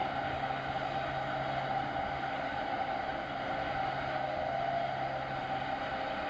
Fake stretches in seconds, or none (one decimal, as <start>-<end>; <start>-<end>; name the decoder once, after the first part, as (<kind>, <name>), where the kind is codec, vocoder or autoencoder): none